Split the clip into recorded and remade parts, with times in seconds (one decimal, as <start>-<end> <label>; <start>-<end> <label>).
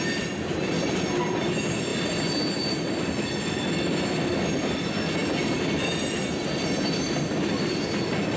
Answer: 0.0-8.4 recorded